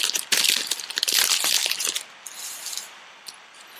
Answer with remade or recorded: recorded